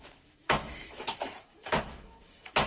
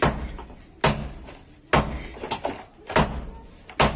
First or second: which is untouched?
second